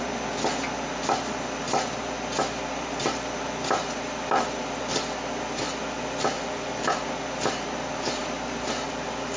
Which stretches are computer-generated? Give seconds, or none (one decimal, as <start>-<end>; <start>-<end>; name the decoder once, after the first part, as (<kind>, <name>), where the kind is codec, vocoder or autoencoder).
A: none